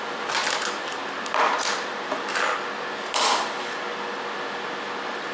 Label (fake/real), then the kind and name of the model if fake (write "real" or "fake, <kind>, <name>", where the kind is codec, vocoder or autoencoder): real